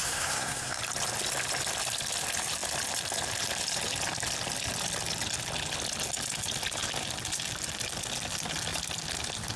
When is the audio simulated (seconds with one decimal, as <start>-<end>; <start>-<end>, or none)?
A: 0.0-0.8